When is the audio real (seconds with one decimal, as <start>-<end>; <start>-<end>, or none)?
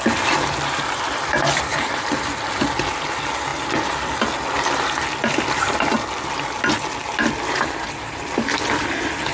0.0-1.7; 2.3-9.3